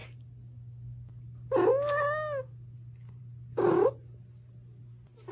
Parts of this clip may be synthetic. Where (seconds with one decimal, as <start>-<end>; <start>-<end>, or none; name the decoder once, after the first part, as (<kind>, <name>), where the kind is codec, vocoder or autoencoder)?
none